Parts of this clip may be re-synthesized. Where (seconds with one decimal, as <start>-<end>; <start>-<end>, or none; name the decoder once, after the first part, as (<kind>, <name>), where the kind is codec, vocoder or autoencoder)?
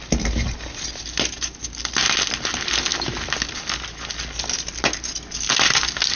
none